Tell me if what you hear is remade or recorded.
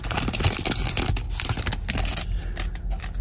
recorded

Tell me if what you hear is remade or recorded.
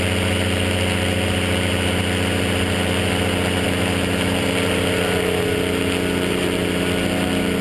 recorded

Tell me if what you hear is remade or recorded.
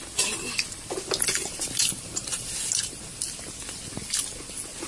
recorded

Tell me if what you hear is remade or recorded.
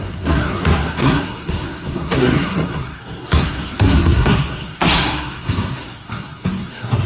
remade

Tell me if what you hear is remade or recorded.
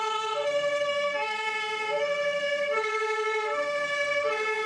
remade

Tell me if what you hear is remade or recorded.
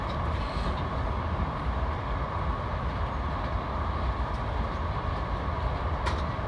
recorded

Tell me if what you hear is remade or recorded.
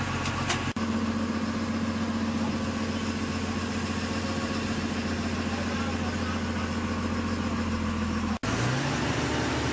recorded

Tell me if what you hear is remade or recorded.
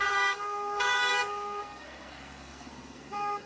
remade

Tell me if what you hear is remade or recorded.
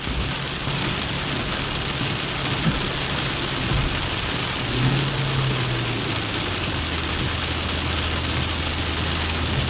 recorded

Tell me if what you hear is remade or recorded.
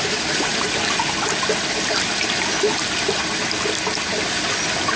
recorded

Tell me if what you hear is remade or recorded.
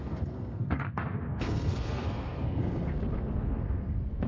remade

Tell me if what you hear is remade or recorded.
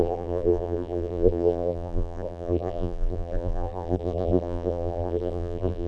remade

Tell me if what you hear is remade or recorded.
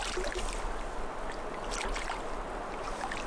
recorded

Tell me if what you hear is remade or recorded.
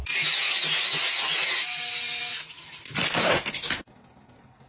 recorded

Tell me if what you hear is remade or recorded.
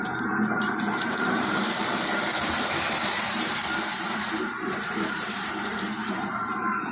remade